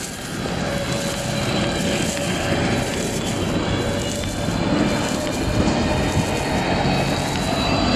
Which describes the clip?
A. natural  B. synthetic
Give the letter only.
A